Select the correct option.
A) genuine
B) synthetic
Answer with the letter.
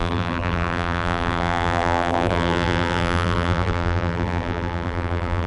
B